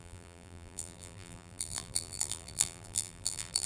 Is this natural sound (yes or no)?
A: no